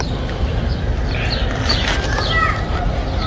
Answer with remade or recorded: recorded